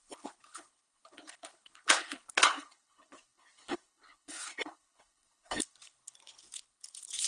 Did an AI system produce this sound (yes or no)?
yes